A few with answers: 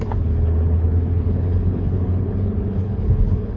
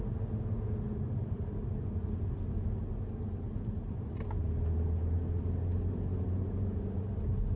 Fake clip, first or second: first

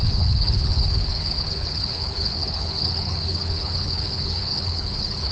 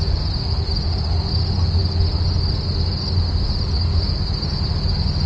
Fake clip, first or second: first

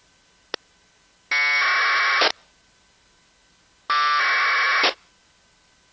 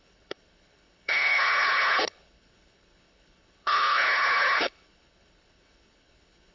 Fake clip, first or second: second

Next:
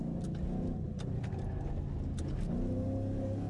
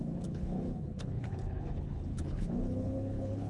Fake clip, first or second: second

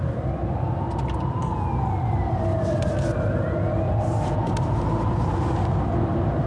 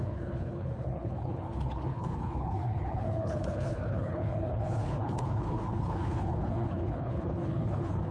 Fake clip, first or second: second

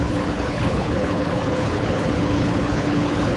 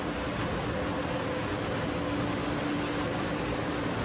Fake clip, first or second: first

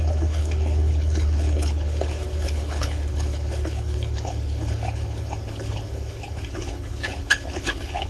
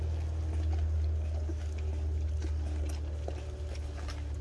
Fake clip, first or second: first